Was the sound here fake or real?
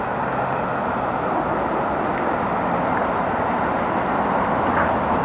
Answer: real